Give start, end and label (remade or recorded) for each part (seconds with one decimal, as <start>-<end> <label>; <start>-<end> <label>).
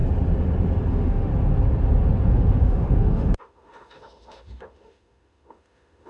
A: 0.0-0.9 recorded; 0.9-1.3 remade; 1.3-2.3 recorded; 2.3-6.1 remade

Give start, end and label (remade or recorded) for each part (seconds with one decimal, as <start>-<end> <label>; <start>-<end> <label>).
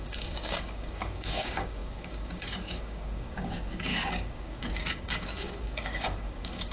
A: 0.0-6.7 remade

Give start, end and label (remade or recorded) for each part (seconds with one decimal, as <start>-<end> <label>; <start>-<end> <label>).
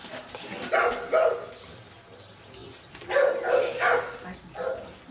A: 0.0-5.1 recorded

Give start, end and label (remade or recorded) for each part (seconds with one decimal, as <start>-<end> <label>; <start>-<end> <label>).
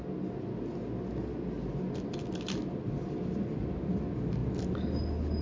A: 0.0-5.4 recorded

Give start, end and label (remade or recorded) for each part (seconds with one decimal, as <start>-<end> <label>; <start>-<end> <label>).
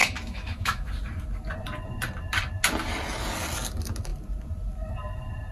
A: 0.0-0.9 remade; 0.9-5.5 recorded